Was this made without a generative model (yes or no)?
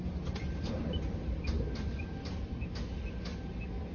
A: yes